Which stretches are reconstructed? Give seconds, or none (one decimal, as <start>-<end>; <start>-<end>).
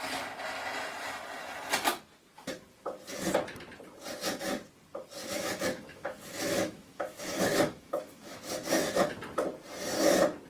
5.2-9.1